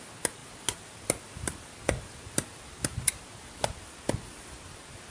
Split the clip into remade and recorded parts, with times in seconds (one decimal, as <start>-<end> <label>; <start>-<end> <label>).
0.0-5.1 recorded